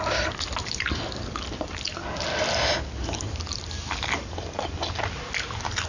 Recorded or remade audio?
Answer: recorded